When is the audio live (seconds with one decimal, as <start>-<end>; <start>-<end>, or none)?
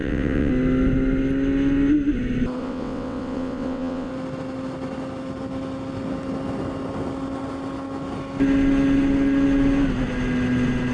0.5-2.6; 4.1-10.9